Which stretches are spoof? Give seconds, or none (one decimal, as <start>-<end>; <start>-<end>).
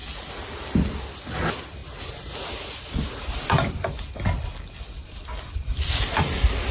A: none